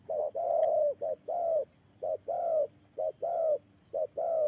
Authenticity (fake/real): real